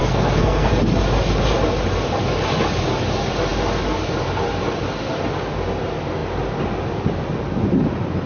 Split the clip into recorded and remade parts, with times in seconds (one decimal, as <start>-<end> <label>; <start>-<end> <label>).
0.0-0.7 remade; 0.7-8.3 recorded